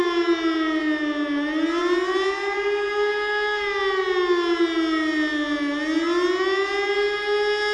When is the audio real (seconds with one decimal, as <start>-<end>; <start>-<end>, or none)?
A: 0.0-7.7